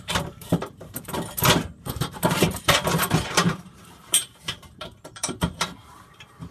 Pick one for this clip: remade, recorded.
remade